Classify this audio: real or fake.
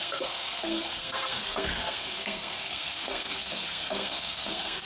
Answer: fake